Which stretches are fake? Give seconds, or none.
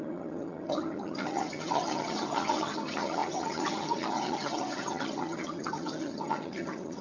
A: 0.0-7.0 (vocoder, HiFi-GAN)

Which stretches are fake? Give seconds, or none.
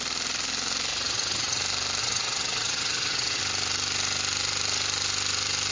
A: 0.9-1.6 (vocoder, HiFi-GAN); 2.0-3.4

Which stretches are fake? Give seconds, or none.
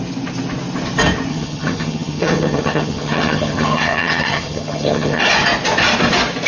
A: 1.3-5.2 (vocoder, HiFi-GAN)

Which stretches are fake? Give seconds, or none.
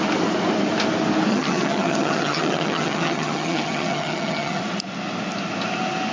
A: 1.3-4.6 (vocoder, HiFi-GAN)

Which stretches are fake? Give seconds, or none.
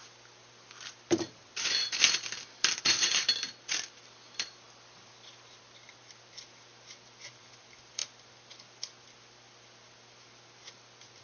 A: none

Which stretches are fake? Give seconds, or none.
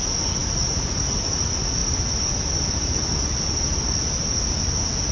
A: none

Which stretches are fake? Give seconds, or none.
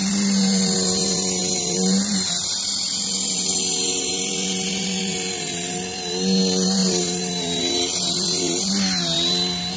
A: none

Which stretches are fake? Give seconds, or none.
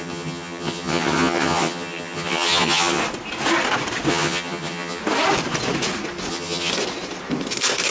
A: 0.0-3.0 (vocoder, HiFi-GAN); 4.1-5.0; 6.3-6.7